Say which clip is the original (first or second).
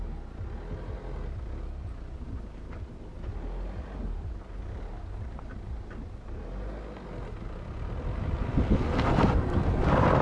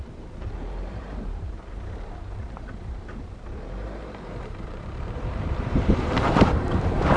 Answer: first